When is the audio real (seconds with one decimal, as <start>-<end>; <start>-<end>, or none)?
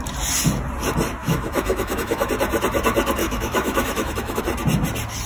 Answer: 0.0-1.2; 2.3-3.2; 4.4-5.3